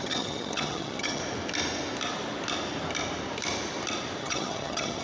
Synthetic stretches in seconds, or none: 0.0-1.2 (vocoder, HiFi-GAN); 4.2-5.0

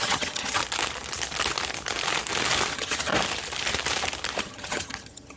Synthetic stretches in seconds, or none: 0.0-0.6 (vocoder, HiFi-GAN); 2.7-3.1; 4.4-5.4

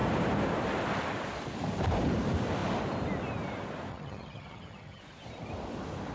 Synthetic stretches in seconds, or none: 3.9-5.0 (vocoder, HiFi-GAN)